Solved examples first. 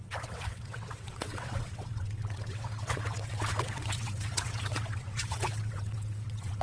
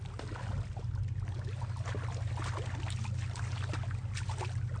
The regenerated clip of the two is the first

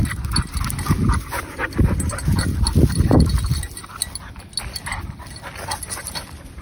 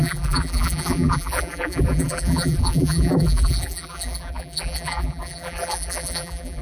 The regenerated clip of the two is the second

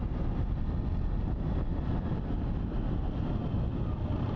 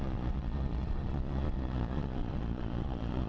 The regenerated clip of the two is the second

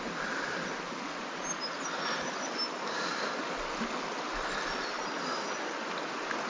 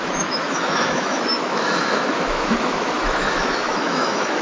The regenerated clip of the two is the second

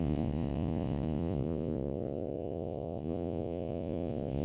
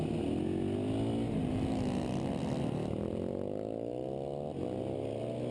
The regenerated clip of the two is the first